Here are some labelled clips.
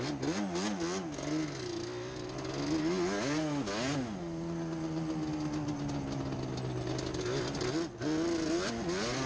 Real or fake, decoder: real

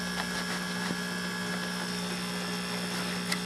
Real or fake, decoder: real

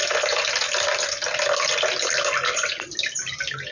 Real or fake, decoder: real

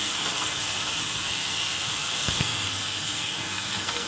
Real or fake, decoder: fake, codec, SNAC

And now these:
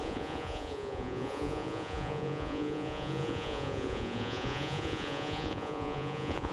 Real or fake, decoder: fake, vocoder, Vocos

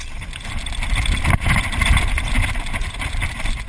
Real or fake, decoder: real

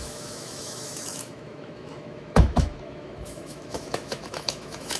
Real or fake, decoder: fake, autoencoder, DAC-VAE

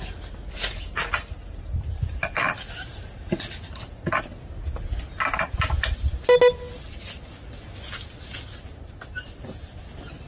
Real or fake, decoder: real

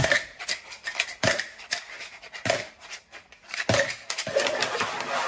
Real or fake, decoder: real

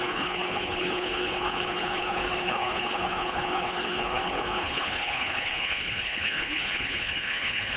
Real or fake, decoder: fake, codec, HILCodec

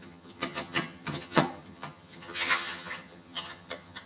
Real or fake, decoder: fake, vocoder, HiFi-GAN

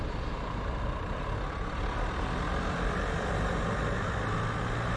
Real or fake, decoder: real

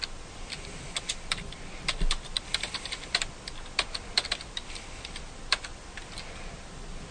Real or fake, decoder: real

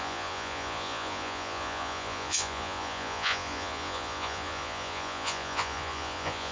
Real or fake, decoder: fake, vocoder, Vocos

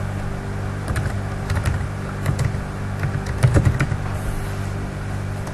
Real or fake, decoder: real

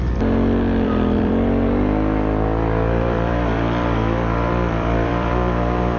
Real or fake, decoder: fake, vocoder, BigVGAN v2